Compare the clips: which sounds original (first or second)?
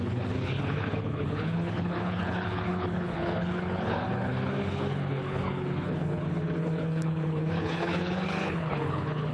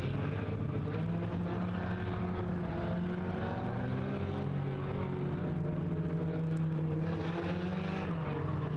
second